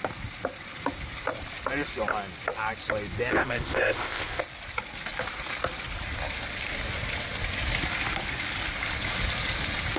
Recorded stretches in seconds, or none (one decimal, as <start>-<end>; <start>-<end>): 0.0-3.3; 4.4-10.0